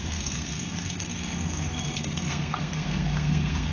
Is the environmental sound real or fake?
fake